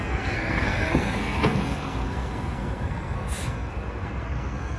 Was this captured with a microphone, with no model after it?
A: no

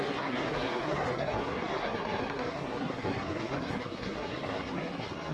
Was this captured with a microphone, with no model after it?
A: no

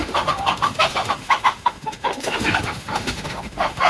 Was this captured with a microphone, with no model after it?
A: no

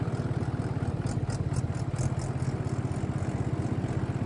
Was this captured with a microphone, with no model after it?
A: yes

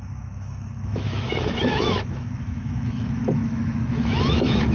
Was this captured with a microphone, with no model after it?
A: no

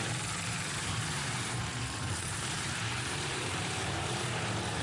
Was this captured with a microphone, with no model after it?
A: no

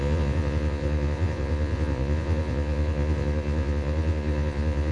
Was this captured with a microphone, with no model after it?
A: no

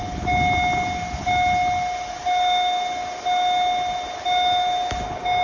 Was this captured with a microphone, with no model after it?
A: yes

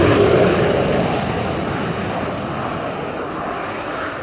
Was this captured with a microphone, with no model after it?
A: yes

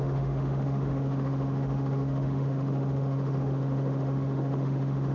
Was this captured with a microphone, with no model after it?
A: no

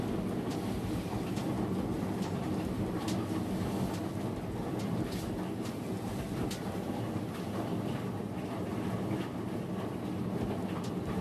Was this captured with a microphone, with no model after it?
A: yes